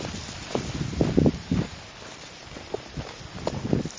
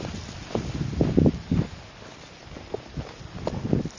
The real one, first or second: second